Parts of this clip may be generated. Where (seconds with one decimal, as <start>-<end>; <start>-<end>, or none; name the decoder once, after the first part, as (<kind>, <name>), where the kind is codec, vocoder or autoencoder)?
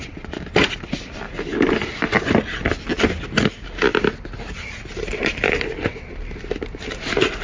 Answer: none